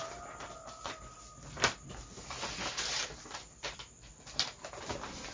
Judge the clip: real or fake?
real